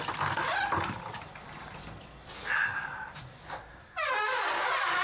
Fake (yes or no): no